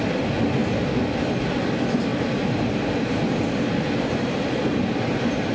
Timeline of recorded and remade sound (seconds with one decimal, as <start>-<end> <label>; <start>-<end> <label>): 0.0-2.1 recorded; 2.1-5.5 remade